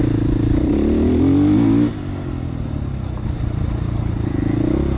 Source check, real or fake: real